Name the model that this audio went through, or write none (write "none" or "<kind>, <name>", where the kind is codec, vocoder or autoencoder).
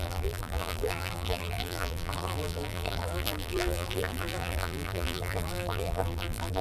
vocoder, BigVGAN v2